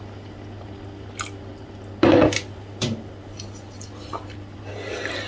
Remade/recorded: recorded